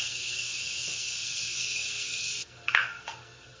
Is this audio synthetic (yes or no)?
yes